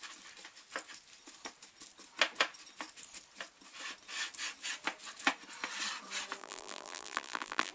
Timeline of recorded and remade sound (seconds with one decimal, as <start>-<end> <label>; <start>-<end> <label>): 0.0-6.4 recorded; 6.4-7.7 remade